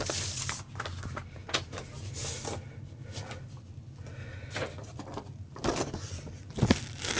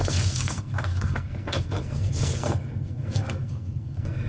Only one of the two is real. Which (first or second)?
first